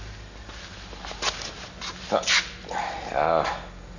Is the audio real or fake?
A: real